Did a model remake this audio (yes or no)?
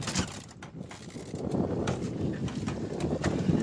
no